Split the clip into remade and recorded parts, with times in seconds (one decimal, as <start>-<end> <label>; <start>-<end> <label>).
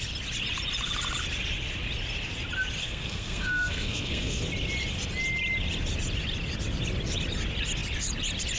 0.0-2.8 recorded; 2.8-4.4 remade; 4.4-8.6 recorded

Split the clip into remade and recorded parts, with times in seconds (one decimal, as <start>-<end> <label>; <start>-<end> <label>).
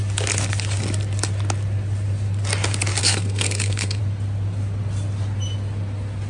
0.0-3.0 recorded; 3.0-4.0 remade; 4.0-6.3 recorded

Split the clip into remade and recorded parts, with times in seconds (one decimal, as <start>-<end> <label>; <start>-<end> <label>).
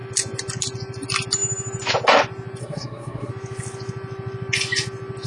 0.0-2.6 recorded; 2.6-3.3 remade; 3.3-5.3 recorded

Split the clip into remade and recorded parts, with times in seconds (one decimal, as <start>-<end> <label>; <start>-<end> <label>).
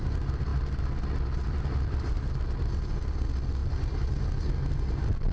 0.0-5.3 recorded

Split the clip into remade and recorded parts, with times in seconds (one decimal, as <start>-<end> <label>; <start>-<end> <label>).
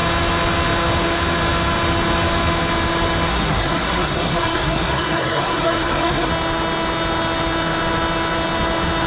0.0-3.3 recorded; 3.3-6.3 remade; 6.3-9.1 recorded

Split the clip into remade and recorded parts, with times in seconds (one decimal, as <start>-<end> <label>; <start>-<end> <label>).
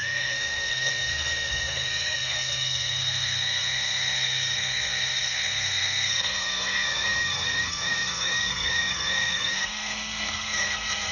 0.0-11.1 remade